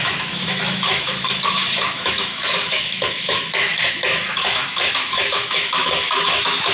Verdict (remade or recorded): remade